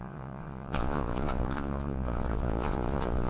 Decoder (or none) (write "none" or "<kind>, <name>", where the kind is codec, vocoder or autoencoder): vocoder, Vocos